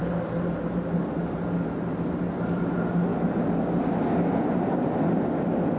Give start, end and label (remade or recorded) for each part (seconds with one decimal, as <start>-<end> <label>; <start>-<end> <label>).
0.0-5.8 recorded